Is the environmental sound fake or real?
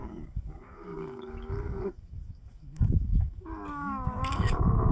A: fake